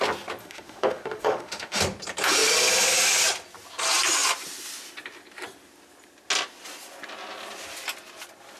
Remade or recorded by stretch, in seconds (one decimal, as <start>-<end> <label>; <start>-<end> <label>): 0.0-0.4 recorded; 0.4-1.8 remade; 1.8-8.6 recorded